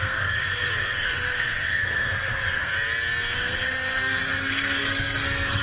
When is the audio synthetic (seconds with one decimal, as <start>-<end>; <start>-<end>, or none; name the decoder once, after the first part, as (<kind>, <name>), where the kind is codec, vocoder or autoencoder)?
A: 0.0-2.7 (codec, SNAC); 3.3-5.6